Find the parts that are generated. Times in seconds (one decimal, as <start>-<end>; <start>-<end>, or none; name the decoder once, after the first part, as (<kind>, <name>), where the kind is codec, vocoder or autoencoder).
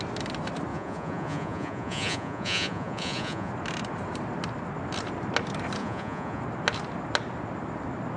0.7-3.5 (vocoder, Vocos); 5.8-6.4